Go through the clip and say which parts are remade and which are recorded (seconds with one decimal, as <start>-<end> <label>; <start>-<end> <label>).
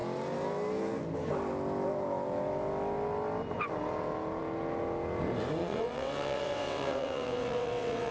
0.0-5.6 recorded; 5.6-8.1 remade